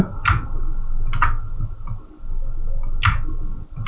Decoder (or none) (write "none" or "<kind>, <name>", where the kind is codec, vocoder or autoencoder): none